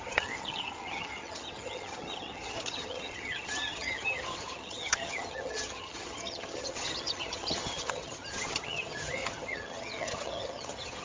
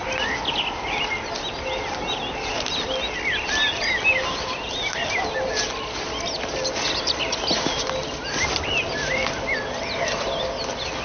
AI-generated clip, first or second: first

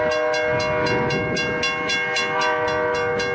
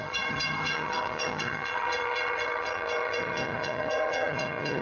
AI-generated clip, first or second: second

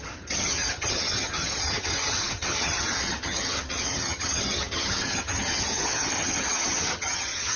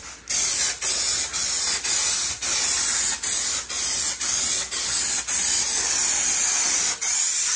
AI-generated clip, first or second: first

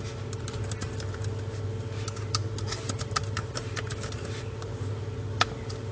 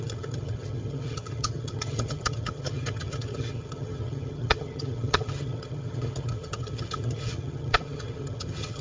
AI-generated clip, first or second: second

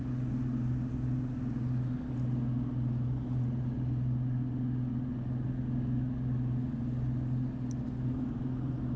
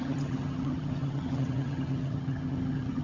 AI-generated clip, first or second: second